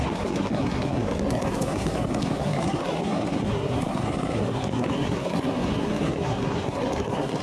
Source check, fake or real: fake